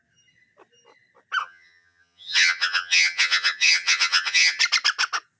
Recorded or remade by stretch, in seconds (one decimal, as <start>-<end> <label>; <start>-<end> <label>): 0.0-1.4 recorded; 1.4-4.6 remade; 4.6-5.4 recorded